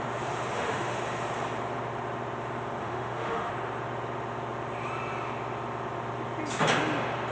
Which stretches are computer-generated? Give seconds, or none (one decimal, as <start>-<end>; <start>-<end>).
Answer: 0.5-1.0; 2.8-3.5